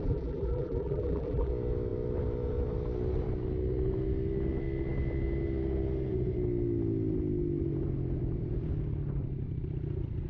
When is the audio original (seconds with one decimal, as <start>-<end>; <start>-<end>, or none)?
1.5-10.3